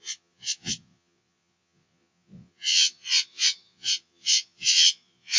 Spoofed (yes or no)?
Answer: yes